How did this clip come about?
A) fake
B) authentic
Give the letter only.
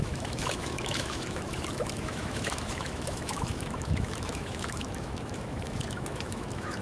A